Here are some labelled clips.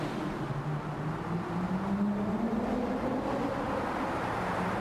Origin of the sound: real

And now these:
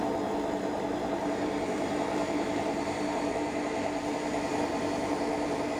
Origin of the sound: fake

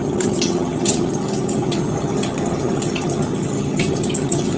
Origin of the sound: fake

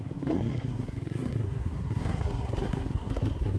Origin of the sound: fake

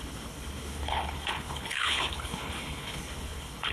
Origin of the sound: fake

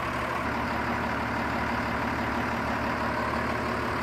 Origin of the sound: real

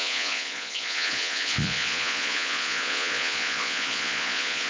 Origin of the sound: fake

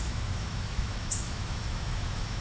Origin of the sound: fake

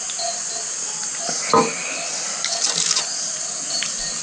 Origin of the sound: real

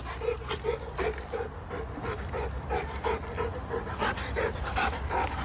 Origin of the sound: real